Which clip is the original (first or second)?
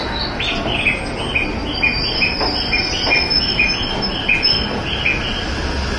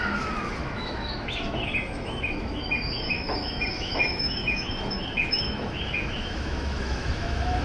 first